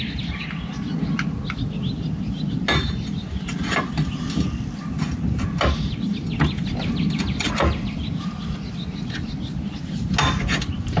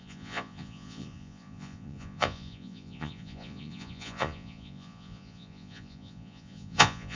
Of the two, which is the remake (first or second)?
second